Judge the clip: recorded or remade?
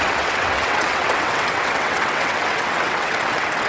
remade